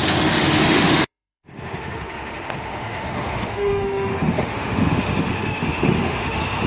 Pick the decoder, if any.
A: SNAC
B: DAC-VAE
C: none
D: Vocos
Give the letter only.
B